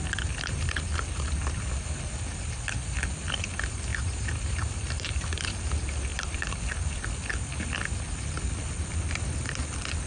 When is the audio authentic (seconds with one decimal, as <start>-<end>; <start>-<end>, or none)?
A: 0.0-3.9; 5.1-6.1; 6.6-10.1